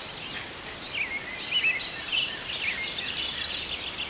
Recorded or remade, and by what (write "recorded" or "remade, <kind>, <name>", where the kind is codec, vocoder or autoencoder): recorded